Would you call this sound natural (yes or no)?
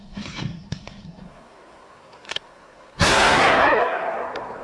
no